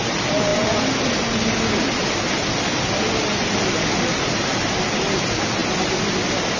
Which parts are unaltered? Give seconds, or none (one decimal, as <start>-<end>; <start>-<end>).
0.0-6.6

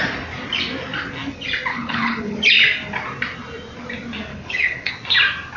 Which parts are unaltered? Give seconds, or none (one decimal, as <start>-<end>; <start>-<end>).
0.0-1.7; 2.4-4.3; 4.9-5.6

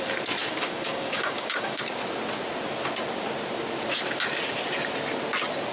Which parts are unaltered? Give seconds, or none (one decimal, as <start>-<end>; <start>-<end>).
0.0-0.4; 1.8-5.7

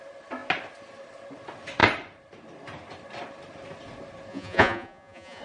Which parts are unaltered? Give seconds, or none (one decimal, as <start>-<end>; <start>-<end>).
0.0-4.3

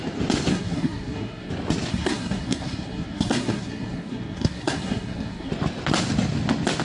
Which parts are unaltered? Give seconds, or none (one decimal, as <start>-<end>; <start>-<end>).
0.0-0.5; 1.5-1.9; 5.5-6.8